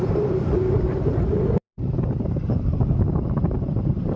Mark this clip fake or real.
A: fake